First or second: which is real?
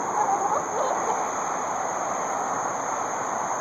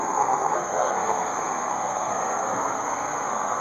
first